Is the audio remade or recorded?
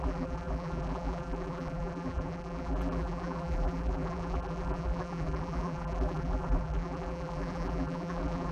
remade